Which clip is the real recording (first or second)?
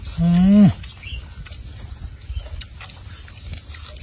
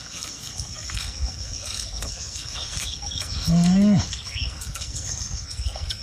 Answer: first